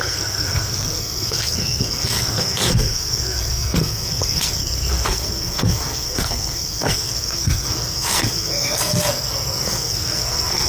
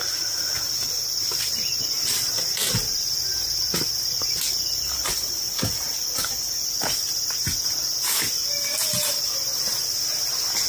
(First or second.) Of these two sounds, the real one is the second